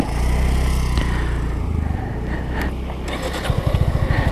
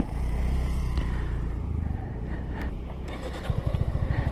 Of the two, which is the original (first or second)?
first